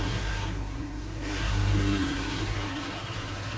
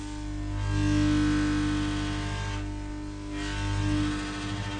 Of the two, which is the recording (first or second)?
second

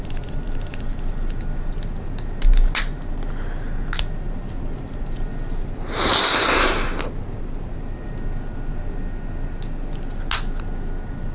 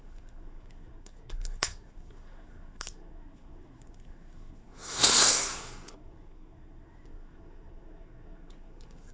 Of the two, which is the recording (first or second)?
first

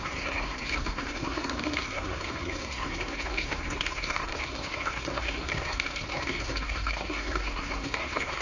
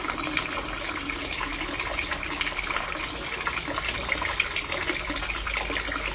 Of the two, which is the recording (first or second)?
second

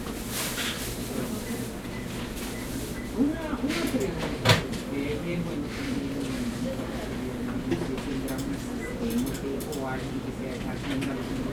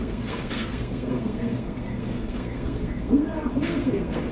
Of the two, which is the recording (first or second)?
first